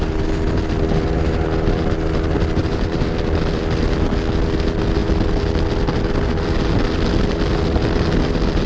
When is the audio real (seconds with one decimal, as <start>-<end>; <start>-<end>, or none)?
0.0-2.6; 3.8-8.7